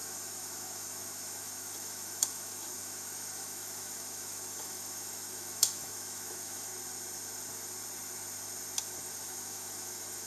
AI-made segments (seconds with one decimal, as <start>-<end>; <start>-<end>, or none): 0.0-6.7; 8.8-10.3